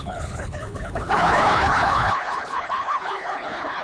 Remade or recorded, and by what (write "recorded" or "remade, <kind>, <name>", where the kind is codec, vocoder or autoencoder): remade, codec, HILCodec